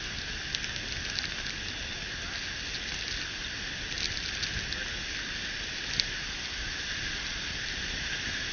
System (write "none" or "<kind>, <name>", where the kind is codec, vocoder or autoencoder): none